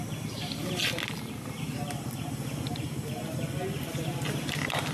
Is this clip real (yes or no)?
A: yes